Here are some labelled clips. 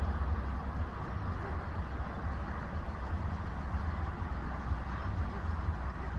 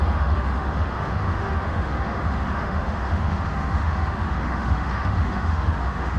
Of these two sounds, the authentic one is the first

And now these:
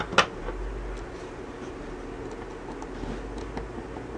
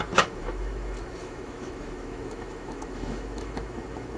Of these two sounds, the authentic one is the first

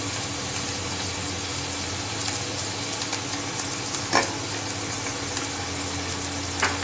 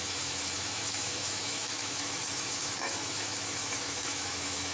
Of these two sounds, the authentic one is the first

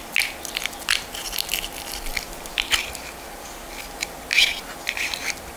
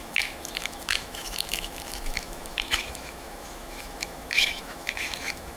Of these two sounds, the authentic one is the first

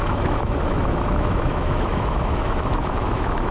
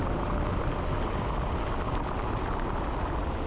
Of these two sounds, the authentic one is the second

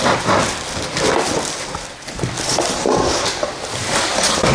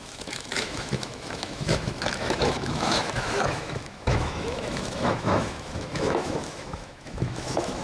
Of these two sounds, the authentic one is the first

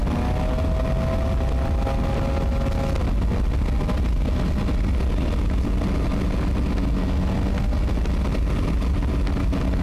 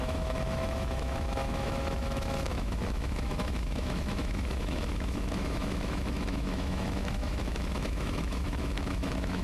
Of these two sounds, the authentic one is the first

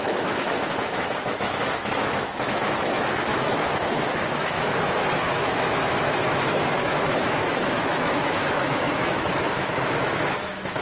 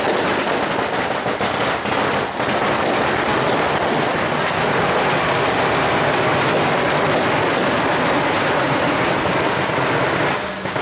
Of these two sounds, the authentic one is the second